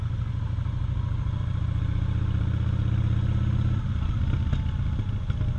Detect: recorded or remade recorded